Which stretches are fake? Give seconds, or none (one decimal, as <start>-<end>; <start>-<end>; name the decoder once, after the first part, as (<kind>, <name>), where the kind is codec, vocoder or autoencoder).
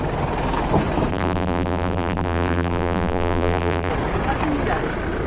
1.1-3.9 (vocoder, BigVGAN v2)